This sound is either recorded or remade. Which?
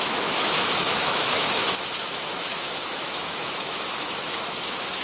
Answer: remade